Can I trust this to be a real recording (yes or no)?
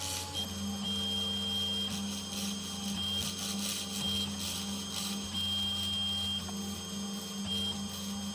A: yes